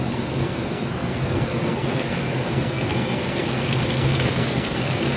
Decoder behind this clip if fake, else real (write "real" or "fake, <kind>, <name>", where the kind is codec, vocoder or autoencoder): fake, codec, SNAC